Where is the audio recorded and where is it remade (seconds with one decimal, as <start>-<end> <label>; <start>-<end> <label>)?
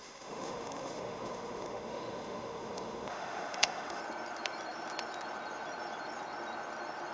0.0-4.0 remade; 4.0-7.1 recorded